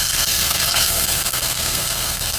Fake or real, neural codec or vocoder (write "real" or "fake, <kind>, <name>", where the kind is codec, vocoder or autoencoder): fake, codec, SNAC